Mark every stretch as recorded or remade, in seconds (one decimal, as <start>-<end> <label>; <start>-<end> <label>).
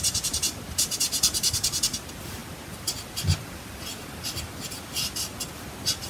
0.0-6.1 recorded